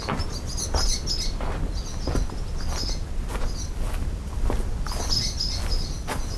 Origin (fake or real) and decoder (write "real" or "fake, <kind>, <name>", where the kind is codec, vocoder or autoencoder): real